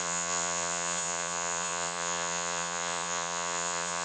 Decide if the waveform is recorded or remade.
remade